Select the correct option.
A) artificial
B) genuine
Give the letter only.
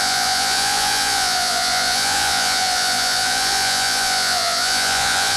A